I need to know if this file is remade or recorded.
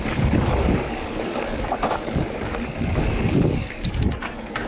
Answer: remade